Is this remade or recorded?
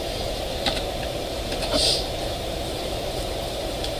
remade